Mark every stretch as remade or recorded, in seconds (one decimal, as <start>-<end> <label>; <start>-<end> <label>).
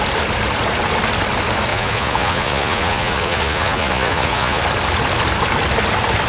0.0-1.7 recorded; 1.7-4.6 remade; 4.6-6.3 recorded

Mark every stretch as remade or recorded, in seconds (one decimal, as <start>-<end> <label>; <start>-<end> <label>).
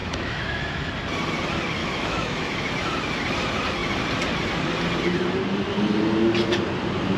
0.0-0.9 remade; 0.9-1.8 recorded; 1.8-2.7 remade; 2.7-7.2 recorded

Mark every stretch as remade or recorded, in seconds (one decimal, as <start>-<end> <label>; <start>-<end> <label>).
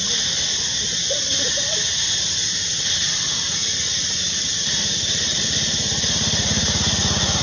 0.0-7.4 recorded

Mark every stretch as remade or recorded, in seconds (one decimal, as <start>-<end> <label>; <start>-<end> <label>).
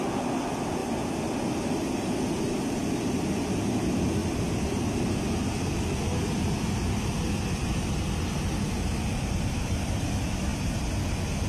0.0-4.2 remade; 4.2-9.2 recorded; 9.2-10.5 remade; 10.5-11.5 recorded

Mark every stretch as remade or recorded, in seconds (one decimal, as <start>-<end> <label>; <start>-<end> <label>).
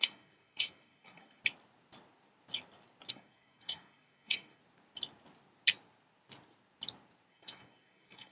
0.0-1.4 remade; 1.4-3.1 recorded; 3.1-4.6 remade; 4.6-7.3 recorded; 7.3-8.3 remade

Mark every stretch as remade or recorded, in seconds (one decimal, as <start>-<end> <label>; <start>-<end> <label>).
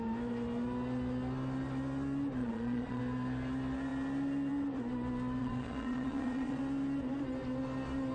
0.0-2.4 recorded; 2.4-3.0 remade; 3.0-5.4 recorded; 5.4-6.6 remade; 6.6-8.1 recorded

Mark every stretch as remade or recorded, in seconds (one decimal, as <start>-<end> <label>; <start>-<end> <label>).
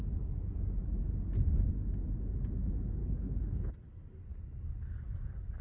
0.0-3.0 recorded; 3.0-3.7 remade; 3.7-5.6 recorded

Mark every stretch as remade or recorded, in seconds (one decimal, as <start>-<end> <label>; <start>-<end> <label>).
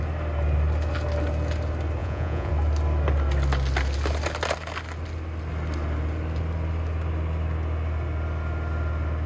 0.0-2.0 recorded; 2.0-2.5 remade; 2.5-9.3 recorded